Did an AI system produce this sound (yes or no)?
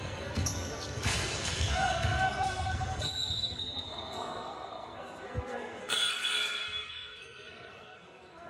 yes